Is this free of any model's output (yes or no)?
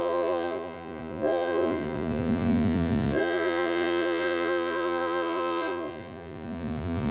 no